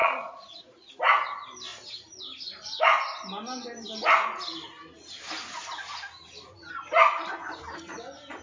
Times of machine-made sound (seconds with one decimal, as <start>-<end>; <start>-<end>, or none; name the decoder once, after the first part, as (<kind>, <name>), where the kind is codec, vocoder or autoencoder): 0.0-0.9 (vocoder, Vocos)